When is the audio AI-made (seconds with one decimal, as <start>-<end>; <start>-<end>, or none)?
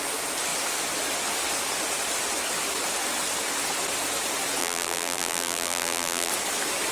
4.6-6.3